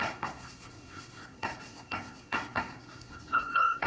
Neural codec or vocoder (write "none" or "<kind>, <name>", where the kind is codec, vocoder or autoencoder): codec, SNAC